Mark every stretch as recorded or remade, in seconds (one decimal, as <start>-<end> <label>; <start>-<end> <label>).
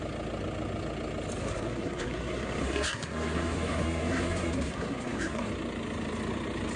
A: 0.0-1.4 recorded; 1.4-5.5 remade; 5.5-6.8 recorded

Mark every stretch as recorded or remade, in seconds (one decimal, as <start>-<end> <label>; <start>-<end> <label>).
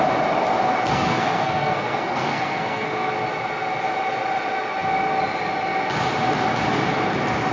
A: 0.0-0.8 recorded; 0.8-3.1 remade; 3.1-7.5 recorded